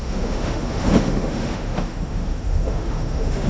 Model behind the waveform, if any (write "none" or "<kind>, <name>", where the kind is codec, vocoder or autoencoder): autoencoder, DAC-VAE